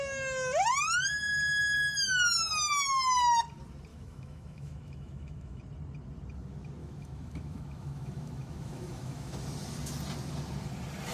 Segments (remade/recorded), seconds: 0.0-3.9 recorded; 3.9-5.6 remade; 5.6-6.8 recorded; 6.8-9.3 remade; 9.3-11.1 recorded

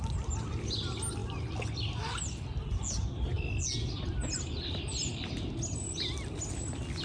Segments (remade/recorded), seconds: 0.0-7.0 recorded

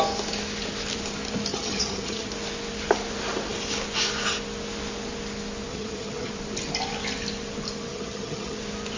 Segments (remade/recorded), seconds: 0.0-1.5 recorded; 1.5-2.3 remade; 2.3-5.7 recorded; 5.7-6.3 remade; 6.3-7.9 recorded; 7.9-8.6 remade; 8.6-9.0 recorded

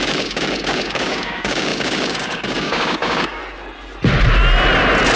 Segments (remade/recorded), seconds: 0.0-3.4 remade; 3.4-5.2 recorded

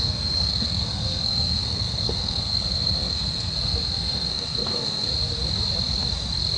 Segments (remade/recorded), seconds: 0.0-5.1 remade; 5.1-6.6 recorded

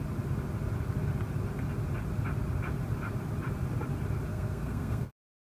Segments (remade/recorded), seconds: 0.0-4.3 recorded; 4.3-5.5 remade